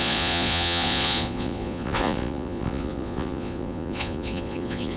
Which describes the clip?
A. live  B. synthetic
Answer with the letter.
B